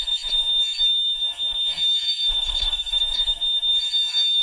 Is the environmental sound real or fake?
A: fake